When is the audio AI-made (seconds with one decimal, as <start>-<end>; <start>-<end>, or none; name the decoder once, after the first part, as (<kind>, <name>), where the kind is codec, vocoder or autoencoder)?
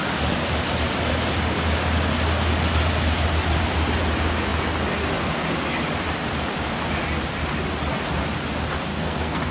8.9-9.5 (codec, SNAC)